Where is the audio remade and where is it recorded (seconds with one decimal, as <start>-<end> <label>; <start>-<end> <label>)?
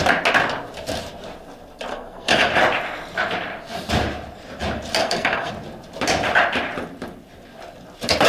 0.0-1.9 recorded; 1.9-2.5 remade; 2.5-5.0 recorded; 5.0-5.5 remade; 5.5-8.3 recorded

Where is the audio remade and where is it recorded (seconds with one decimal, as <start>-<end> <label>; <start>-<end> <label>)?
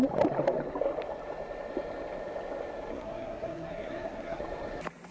0.0-2.9 recorded; 2.9-4.4 remade; 4.4-5.1 recorded